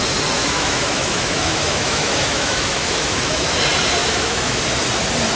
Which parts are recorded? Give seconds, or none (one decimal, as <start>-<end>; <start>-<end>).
0.0-0.4; 3.6-4.0; 4.6-5.4